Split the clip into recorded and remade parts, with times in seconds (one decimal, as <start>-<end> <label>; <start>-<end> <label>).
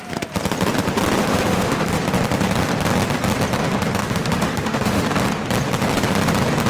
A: 0.0-1.2 recorded; 1.2-2.0 remade; 2.0-4.0 recorded; 4.0-5.0 remade; 5.0-6.7 recorded